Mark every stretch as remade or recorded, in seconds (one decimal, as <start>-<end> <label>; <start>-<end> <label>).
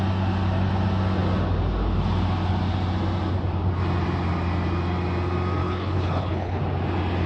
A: 0.0-5.6 recorded; 5.6-6.6 remade; 6.6-7.3 recorded